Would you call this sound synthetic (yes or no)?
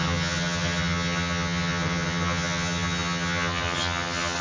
yes